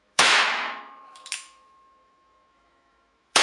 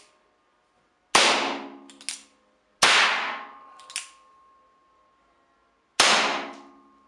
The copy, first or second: first